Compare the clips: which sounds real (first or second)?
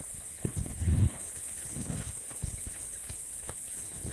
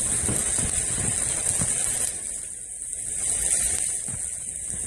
second